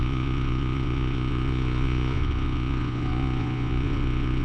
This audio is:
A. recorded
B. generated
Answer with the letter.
B